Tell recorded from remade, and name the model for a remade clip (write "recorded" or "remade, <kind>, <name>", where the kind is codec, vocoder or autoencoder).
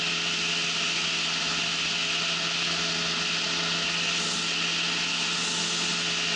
recorded